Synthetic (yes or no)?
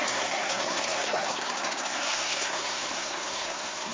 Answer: yes